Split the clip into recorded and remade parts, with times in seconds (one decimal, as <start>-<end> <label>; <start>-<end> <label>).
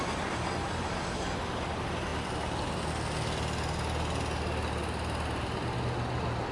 0.0-6.5 recorded